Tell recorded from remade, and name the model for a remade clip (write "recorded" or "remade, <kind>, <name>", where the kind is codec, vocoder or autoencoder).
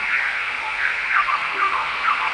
remade, codec, SNAC